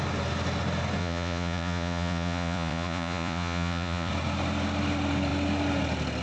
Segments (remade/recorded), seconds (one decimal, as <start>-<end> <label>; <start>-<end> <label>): 0.0-1.0 recorded; 1.0-4.1 remade; 4.1-6.2 recorded